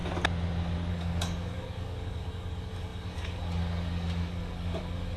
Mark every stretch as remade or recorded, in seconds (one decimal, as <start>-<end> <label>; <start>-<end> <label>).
0.0-0.9 recorded; 0.9-5.2 remade